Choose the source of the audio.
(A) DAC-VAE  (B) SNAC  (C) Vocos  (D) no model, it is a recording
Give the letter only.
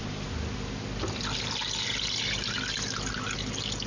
D